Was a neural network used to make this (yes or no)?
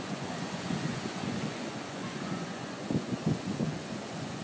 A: yes